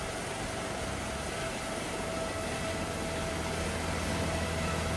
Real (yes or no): yes